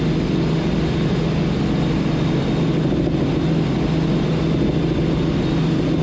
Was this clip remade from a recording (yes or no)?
no